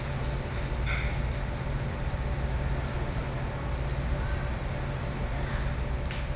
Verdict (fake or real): real